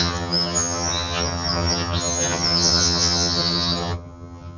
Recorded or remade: remade